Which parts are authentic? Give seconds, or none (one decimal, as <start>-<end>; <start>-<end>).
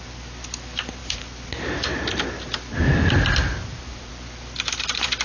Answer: 0.0-5.2